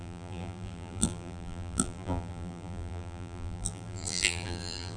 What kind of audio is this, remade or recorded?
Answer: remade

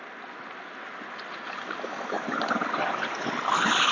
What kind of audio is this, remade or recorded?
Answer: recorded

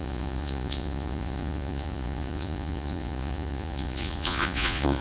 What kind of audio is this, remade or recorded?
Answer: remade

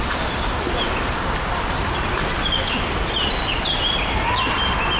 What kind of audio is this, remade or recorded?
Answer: recorded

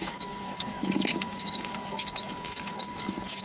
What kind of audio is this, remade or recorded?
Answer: remade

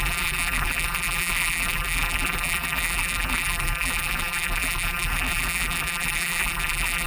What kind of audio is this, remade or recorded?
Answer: remade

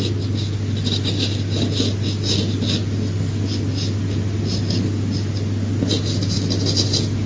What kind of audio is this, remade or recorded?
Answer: recorded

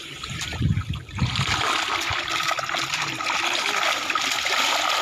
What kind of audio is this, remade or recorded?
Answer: recorded